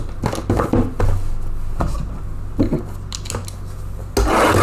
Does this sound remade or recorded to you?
recorded